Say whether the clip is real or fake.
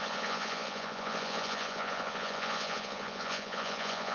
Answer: fake